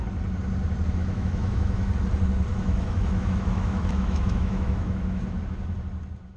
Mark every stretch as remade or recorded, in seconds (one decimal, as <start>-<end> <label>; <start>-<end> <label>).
0.0-1.0 recorded; 1.0-1.9 remade; 1.9-2.5 recorded; 2.5-5.2 remade; 5.2-6.4 recorded